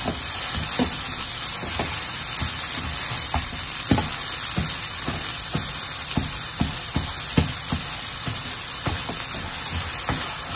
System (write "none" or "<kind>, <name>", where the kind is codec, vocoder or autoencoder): none